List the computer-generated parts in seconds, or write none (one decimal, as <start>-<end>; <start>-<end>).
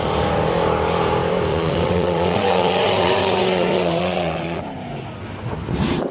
1.5-4.6